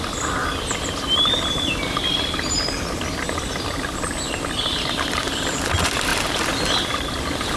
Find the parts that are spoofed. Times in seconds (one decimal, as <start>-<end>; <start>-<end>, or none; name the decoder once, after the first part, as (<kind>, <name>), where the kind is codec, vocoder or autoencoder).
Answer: none